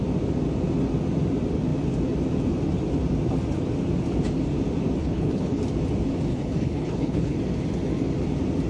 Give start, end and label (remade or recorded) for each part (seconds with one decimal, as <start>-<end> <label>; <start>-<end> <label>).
0.0-5.0 recorded; 5.0-5.6 remade; 5.6-6.3 recorded; 6.3-7.4 remade; 7.4-8.7 recorded